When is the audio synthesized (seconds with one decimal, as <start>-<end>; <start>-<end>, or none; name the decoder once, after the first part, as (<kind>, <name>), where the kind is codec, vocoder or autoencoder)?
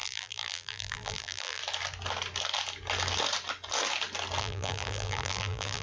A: 0.0-1.6 (vocoder, BigVGAN v2); 4.4-5.8